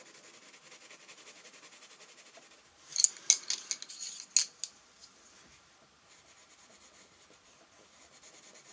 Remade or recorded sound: recorded